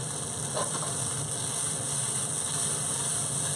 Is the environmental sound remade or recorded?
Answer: recorded